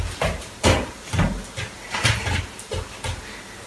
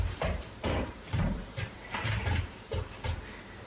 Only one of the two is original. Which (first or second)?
first